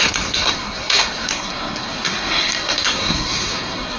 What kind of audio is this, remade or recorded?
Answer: remade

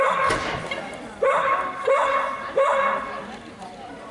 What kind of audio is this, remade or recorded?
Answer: recorded